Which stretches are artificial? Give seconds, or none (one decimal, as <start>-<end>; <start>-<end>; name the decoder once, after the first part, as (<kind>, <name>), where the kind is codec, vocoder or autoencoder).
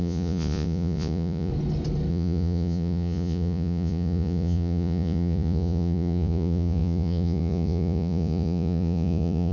0.0-1.5 (vocoder, Vocos); 2.1-9.5